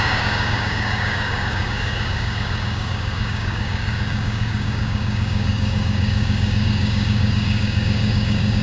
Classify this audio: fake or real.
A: fake